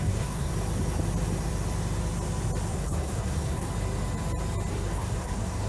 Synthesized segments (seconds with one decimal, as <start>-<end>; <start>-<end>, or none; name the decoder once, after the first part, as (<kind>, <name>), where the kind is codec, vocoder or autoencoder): 0.0-0.5 (codec, SNAC); 2.7-3.7; 4.7-5.7